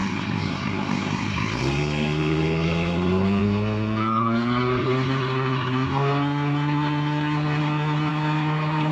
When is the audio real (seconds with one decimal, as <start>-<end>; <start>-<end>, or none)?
none